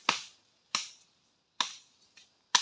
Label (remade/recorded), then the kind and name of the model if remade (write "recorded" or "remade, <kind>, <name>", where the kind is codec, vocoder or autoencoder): recorded